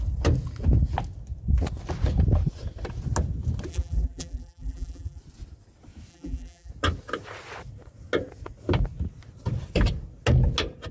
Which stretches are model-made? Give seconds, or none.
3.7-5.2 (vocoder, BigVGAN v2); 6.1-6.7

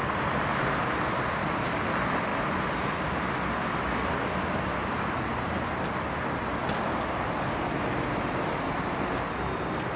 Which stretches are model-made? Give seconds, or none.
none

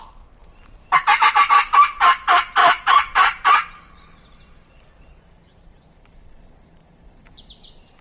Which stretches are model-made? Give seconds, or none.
2.6-7.4 (vocoder, BigVGAN v2)

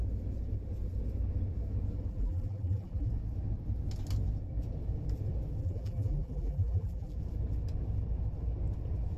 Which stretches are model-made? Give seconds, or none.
2.1-3.1 (vocoder, BigVGAN v2); 5.6-7.2

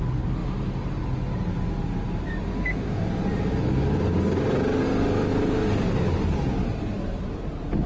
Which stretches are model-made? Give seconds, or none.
5.3-7.5 (vocoder, BigVGAN v2)

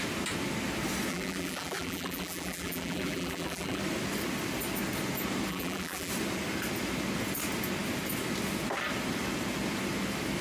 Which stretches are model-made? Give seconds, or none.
1.1-3.8 (vocoder, BigVGAN v2); 5.5-6.1

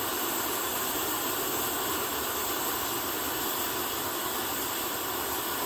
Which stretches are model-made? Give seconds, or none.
none

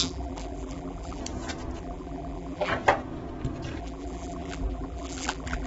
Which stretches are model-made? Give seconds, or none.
0.0-1.2 (vocoder, BigVGAN v2); 1.8-2.7; 3.8-5.7